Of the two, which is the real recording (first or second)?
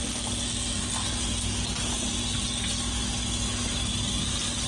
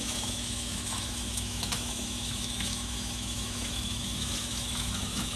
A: first